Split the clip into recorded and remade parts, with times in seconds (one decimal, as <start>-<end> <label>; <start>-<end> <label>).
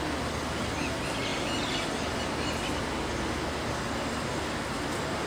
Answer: 0.0-5.3 recorded